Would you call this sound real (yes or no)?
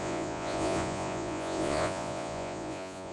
no